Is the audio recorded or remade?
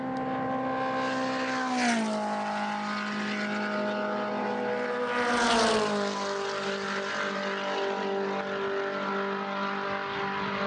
recorded